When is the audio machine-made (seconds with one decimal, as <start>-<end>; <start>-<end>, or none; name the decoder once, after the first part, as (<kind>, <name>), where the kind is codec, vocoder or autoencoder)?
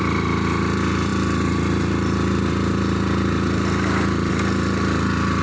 none